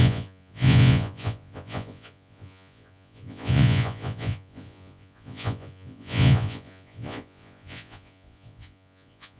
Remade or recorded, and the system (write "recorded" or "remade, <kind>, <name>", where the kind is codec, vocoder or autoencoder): remade, vocoder, Vocos